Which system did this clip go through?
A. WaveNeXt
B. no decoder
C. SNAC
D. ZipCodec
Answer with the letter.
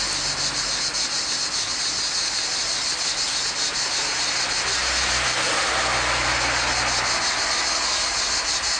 B